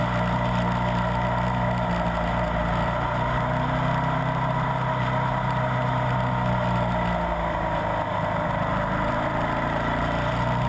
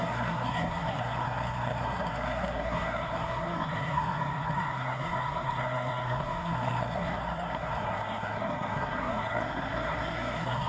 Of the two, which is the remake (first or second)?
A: second